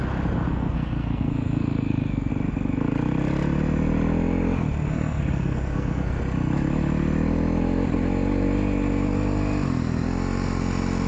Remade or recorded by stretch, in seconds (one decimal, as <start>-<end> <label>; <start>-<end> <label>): 0.0-0.5 recorded; 0.5-2.3 remade; 2.3-4.9 recorded; 4.9-6.2 remade; 6.2-11.1 recorded